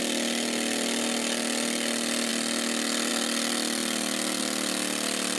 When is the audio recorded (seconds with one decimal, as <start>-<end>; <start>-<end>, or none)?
0.0-3.8; 4.4-5.4